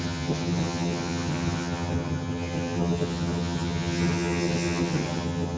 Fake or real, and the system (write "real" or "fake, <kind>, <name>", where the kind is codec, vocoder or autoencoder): fake, vocoder, HiFi-GAN